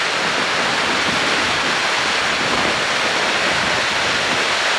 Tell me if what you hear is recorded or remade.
recorded